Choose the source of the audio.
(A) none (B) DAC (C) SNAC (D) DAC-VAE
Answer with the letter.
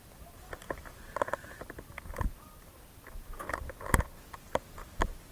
A